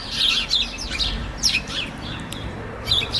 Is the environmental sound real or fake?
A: fake